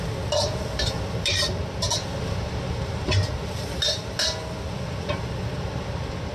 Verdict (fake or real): real